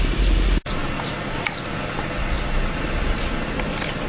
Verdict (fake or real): real